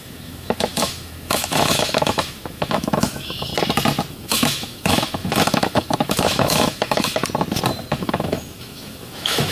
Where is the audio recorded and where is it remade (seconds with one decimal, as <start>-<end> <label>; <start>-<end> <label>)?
0.0-3.5 remade; 3.5-4.1 recorded; 4.1-7.2 remade; 7.2-7.9 recorded; 7.9-9.5 remade